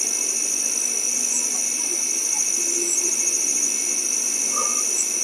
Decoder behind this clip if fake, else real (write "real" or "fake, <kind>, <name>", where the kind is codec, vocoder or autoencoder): real